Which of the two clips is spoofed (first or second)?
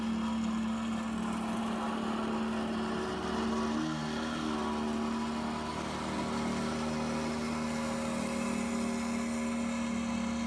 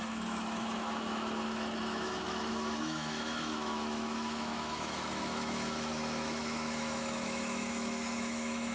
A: second